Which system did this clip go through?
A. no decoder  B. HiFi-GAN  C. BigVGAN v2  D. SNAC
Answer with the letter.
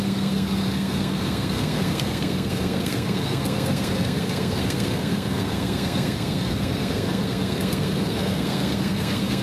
D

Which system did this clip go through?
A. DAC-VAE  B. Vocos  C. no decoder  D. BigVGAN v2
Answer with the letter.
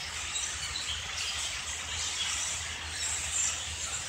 C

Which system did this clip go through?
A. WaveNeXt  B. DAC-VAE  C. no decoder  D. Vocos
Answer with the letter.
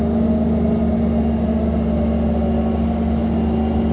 C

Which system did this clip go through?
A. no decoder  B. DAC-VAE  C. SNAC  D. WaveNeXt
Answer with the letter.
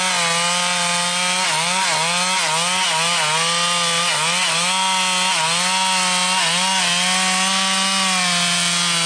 A